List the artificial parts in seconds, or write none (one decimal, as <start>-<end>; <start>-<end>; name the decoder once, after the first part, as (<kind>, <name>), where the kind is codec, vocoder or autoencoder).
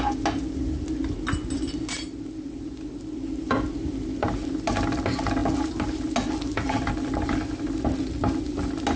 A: none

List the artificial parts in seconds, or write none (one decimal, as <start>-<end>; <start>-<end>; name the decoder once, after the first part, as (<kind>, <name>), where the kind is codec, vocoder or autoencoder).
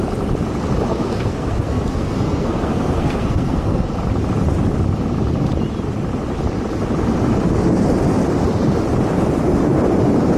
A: 0.9-3.9 (codec, SNAC)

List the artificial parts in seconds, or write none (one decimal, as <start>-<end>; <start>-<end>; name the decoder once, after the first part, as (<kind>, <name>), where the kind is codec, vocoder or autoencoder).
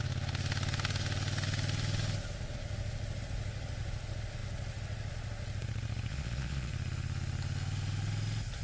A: 6.1-6.7 (vocoder, Vocos)